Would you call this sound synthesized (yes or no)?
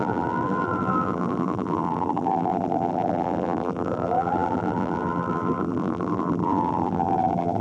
yes